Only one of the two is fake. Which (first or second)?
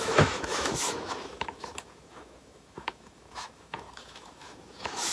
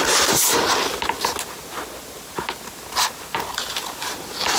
first